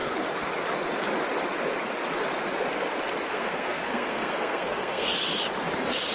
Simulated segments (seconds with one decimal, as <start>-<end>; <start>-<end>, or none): 3.3-5.1